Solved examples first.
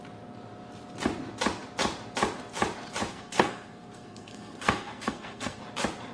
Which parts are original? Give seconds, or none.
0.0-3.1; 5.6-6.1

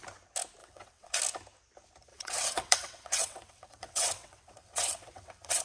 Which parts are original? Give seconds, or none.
0.0-0.6; 1.2-2.1

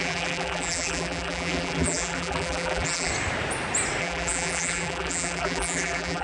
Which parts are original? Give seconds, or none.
3.1-4.0

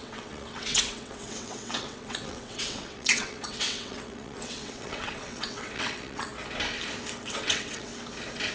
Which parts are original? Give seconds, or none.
6.3-7.2; 7.9-8.5

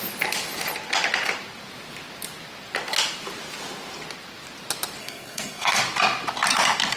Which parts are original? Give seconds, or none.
0.0-5.0; 5.8-7.0

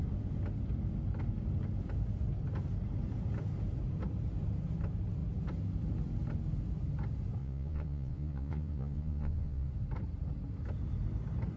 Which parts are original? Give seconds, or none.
0.0-7.4; 9.7-11.6

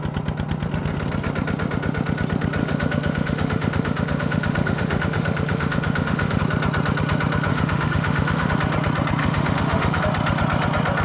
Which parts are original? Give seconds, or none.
0.0-2.6; 6.4-7.5; 8.5-9.2; 10.0-11.0